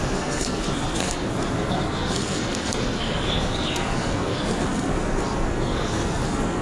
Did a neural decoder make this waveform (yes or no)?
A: yes